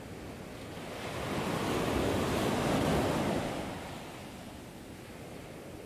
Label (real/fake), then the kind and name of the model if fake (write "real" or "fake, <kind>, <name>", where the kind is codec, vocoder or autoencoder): real